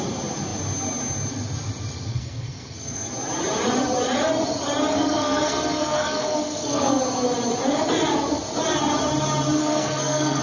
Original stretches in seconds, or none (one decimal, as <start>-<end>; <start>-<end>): 0.0-2.1; 3.1-4.9; 7.0-9.6